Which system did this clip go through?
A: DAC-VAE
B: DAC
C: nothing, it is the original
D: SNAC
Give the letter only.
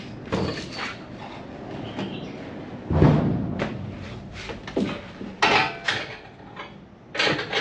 C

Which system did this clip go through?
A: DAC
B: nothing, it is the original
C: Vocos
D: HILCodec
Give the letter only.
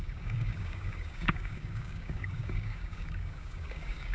A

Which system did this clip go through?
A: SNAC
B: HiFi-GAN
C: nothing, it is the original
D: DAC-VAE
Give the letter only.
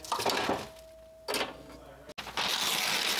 C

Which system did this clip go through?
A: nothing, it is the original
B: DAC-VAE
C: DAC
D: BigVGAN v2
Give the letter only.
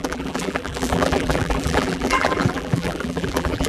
D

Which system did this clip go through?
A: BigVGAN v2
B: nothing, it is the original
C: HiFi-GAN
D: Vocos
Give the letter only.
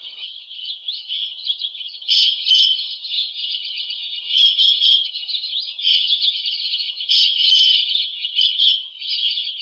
C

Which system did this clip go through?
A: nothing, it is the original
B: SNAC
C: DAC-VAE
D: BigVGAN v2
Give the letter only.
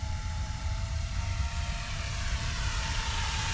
D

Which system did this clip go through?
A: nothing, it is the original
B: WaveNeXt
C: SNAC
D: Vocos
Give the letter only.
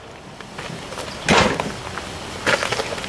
A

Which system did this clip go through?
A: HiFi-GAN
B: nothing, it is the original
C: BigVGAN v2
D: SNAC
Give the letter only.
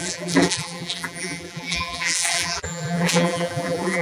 C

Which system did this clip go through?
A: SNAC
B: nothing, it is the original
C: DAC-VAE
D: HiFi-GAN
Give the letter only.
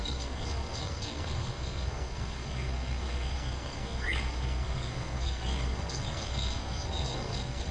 A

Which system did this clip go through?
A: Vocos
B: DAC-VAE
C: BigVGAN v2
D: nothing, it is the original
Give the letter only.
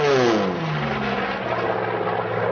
D